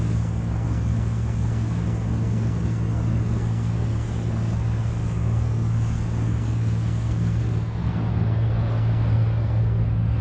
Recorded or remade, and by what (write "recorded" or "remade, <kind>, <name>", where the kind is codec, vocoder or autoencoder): remade, codec, SNAC